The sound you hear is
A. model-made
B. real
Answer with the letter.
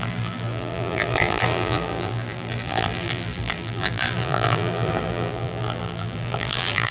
A